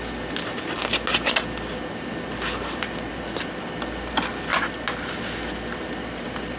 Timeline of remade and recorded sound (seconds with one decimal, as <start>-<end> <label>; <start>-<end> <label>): 0.0-6.6 recorded